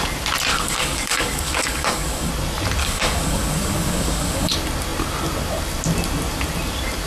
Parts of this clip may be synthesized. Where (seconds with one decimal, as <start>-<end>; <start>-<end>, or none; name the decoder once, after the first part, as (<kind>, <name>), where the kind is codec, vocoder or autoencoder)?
0.5-2.3 (codec, DAC); 2.8-4.5